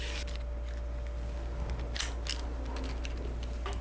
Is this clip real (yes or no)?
yes